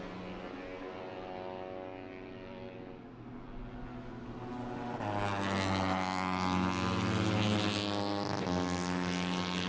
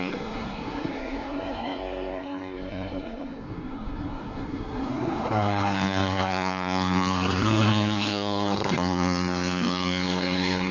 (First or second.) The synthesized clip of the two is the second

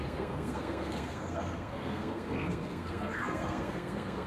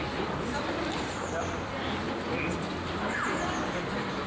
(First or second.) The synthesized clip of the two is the first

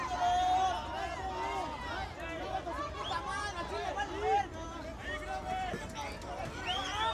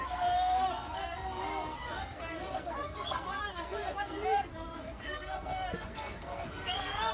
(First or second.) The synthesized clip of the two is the second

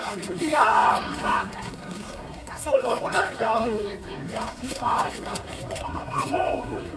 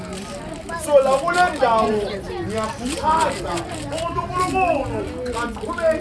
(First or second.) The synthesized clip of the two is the first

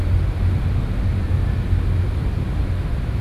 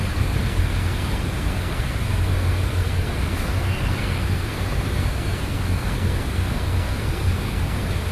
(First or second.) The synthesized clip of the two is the second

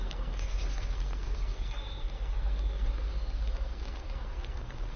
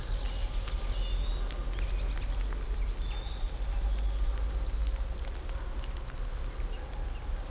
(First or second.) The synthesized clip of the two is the first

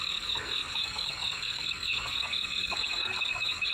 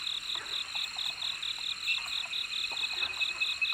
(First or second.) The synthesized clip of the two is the first